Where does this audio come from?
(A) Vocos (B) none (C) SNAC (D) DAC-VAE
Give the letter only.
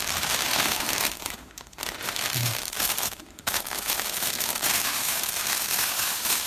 D